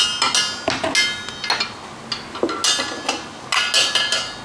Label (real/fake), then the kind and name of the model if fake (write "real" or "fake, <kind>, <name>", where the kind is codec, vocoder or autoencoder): real